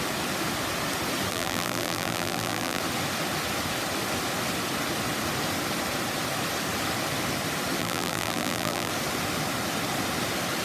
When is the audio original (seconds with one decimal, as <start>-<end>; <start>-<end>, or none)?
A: 0.0-1.3; 2.8-7.8; 8.9-10.6